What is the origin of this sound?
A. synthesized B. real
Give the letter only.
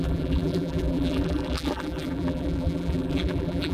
A